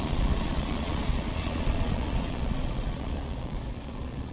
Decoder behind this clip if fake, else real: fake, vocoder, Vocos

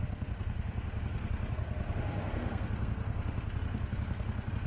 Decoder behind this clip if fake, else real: fake, codec, SNAC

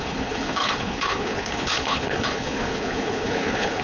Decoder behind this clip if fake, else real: fake, codec, HILCodec